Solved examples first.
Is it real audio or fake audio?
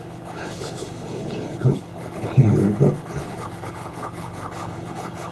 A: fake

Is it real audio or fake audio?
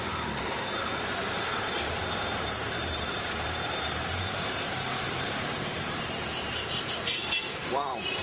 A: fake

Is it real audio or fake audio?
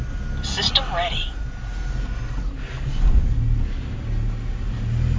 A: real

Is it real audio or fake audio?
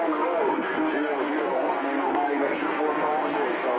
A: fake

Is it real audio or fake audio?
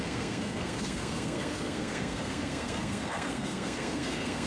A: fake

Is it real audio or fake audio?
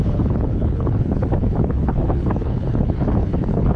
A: fake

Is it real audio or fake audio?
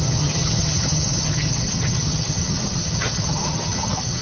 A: fake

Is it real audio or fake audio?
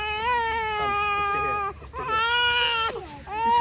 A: real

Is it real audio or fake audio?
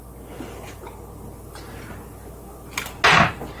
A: real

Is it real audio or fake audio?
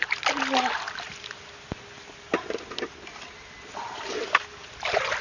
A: real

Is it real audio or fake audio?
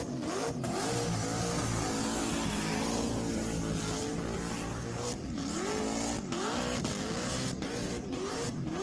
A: real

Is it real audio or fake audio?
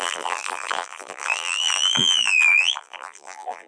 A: fake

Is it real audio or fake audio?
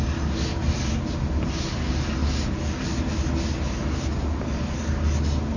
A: real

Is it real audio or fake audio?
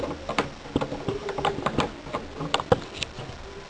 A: real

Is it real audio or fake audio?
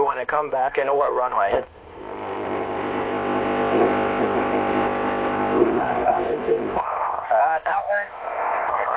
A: fake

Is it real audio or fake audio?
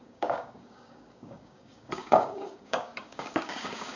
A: fake